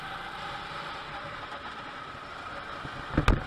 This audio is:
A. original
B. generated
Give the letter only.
A